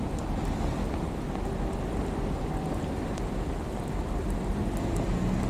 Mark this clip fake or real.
real